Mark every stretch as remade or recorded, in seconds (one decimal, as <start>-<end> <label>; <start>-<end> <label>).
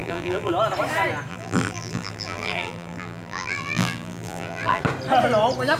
0.0-0.5 remade; 0.5-1.3 recorded; 1.3-4.8 remade; 4.8-5.8 recorded